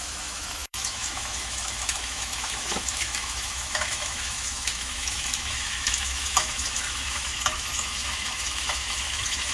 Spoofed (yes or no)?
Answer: yes